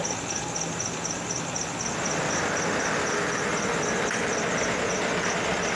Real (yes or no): yes